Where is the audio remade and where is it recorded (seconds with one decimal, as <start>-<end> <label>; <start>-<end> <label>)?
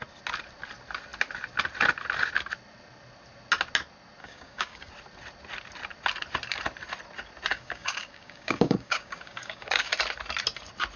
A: 0.0-4.2 recorded; 4.2-4.9 remade; 4.9-7.5 recorded; 7.5-9.9 remade; 9.9-11.0 recorded